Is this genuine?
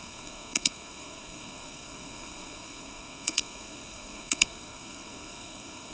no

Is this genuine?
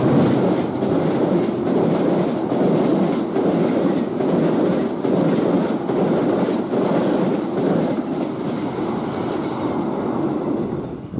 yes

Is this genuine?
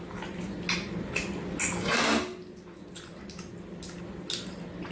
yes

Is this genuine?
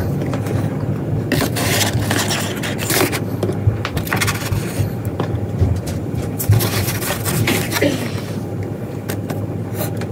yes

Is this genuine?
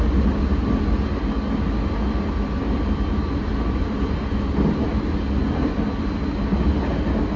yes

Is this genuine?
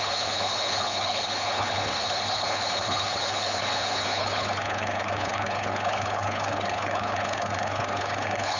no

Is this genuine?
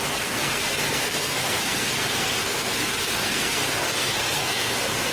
no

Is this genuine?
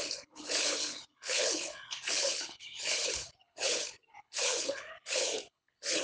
no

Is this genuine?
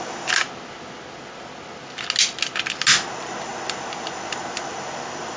yes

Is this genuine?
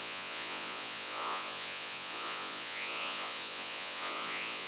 no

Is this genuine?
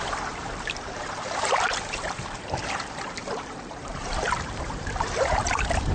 no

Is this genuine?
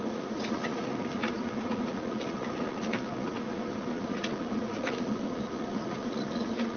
no